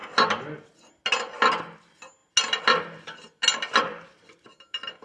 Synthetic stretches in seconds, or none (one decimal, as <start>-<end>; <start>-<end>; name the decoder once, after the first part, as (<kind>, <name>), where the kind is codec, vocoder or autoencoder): none